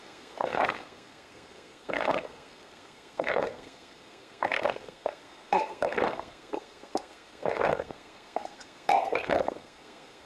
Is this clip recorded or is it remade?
remade